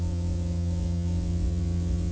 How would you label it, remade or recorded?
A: remade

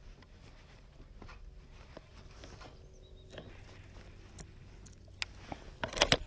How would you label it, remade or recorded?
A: recorded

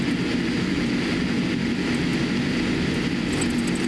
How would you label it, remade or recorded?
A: recorded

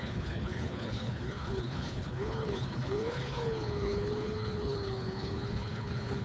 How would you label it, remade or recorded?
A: remade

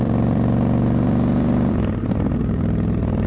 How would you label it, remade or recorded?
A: remade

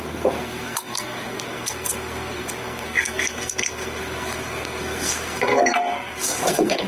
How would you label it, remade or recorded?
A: remade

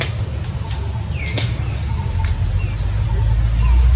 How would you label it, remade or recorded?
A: recorded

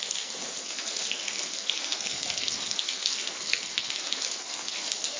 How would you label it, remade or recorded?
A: remade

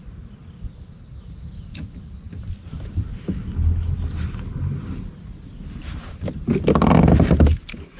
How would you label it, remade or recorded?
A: recorded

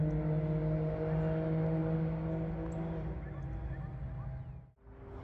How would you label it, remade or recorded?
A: recorded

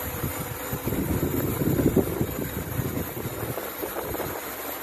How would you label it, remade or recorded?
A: recorded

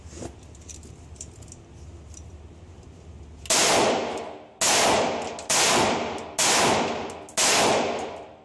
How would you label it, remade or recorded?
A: recorded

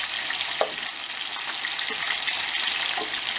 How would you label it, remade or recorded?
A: recorded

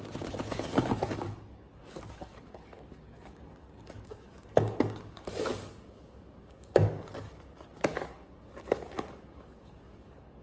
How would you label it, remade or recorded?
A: remade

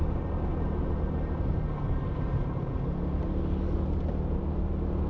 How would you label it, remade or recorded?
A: recorded